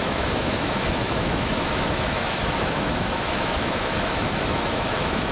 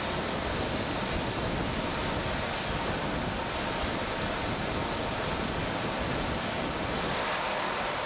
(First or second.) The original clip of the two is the second